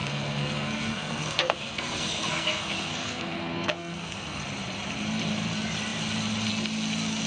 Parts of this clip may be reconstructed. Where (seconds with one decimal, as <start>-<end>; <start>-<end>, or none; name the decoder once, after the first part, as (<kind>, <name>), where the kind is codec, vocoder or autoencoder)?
0.0-4.4 (codec, SNAC)